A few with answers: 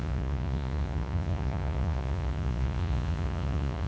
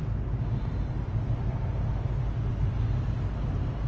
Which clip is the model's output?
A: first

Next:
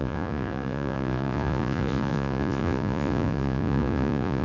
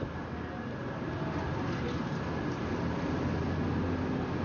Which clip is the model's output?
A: first